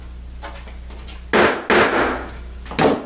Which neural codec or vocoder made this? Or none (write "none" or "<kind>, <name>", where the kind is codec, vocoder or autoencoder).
none